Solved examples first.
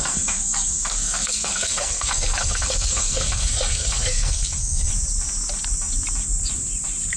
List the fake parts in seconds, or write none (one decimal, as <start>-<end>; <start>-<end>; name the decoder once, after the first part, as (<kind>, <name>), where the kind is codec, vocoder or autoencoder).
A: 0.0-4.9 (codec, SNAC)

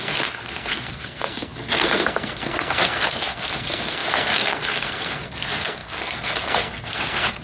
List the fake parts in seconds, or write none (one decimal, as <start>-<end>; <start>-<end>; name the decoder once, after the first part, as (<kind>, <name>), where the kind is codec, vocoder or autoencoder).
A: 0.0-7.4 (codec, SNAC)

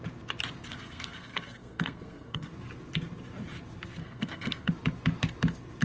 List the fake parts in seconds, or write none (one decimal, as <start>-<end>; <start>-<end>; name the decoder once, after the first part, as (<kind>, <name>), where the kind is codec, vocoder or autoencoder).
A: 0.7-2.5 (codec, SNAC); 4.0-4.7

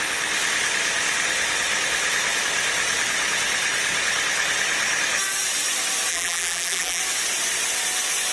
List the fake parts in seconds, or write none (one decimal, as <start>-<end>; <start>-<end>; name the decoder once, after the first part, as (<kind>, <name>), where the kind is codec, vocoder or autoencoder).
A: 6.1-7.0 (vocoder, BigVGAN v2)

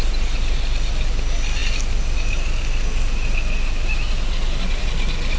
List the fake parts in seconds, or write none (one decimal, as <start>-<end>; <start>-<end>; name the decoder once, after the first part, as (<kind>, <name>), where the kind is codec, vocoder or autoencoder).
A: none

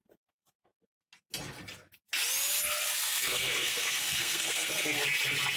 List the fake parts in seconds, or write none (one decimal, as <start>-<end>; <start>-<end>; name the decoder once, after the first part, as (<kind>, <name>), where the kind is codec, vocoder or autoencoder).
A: 3.0-5.0 (codec, SNAC)

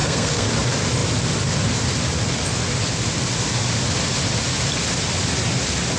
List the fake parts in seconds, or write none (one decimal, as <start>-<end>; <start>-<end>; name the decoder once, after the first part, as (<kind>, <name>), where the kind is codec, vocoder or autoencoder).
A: 0.0-0.5 (codec, SNAC)